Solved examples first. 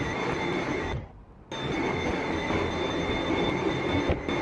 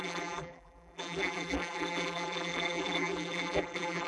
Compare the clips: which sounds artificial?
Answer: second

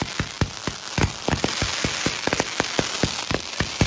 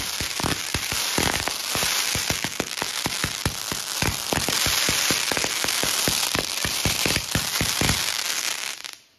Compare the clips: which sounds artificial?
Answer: second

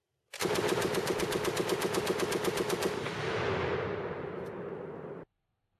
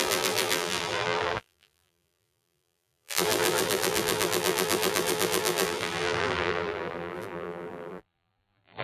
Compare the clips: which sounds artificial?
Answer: second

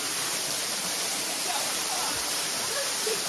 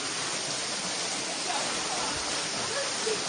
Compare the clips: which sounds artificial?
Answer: first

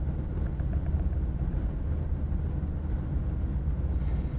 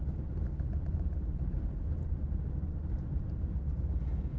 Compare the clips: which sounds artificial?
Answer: second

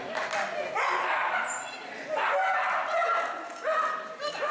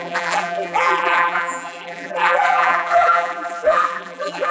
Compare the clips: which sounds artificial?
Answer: second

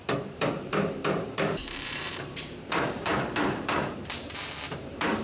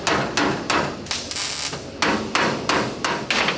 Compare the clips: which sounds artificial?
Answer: first